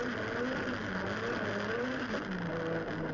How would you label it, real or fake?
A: real